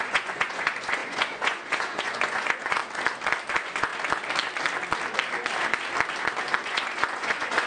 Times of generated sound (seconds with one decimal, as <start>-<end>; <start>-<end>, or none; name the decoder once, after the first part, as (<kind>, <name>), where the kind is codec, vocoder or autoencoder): 0.0-2.8 (vocoder, Vocos); 3.5-3.9; 6.6-7.7